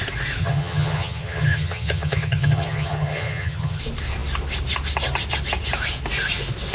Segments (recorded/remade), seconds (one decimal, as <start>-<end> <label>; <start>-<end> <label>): 0.0-0.4 recorded; 0.4-3.8 remade; 3.8-6.7 recorded